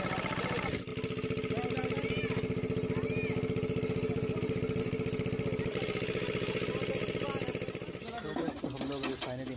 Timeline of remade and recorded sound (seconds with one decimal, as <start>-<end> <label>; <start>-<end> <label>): 0.0-9.6 recorded